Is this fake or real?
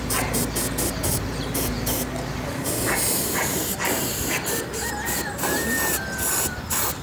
real